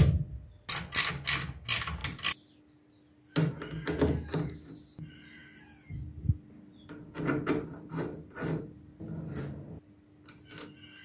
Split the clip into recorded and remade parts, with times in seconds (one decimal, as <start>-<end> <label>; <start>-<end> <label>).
0.0-11.0 recorded